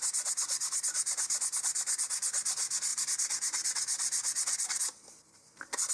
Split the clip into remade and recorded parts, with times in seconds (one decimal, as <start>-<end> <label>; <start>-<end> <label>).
0.0-5.9 recorded